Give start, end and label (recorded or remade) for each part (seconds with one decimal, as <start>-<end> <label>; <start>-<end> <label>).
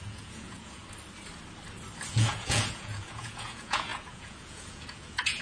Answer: 0.0-0.8 remade; 0.8-2.1 recorded; 2.1-5.4 remade